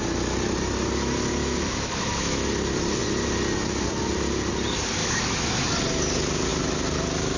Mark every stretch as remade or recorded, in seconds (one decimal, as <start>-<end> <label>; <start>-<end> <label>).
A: 0.0-1.4 recorded; 1.4-2.4 remade; 2.4-5.0 recorded; 5.0-5.7 remade; 5.7-7.4 recorded